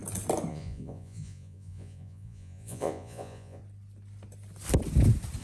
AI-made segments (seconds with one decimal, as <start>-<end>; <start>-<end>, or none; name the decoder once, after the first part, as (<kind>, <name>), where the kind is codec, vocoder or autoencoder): 0.5-3.6 (vocoder, Vocos)